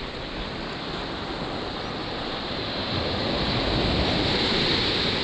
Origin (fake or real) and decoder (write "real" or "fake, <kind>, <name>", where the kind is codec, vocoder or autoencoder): real